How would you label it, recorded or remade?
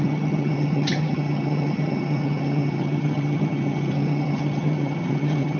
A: remade